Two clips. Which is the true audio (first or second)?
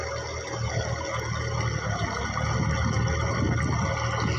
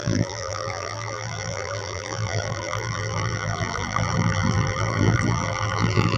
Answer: first